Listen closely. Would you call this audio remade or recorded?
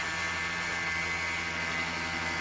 recorded